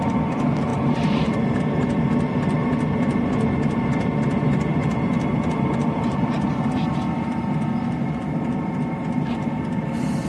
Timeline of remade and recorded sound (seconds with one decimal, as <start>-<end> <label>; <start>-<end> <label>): 0.0-10.3 recorded